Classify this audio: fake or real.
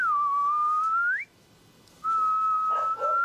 real